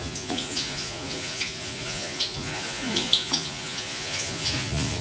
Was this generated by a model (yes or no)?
yes